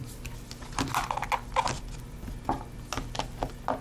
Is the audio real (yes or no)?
yes